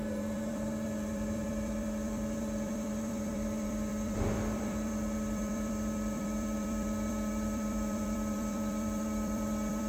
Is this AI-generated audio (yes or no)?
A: yes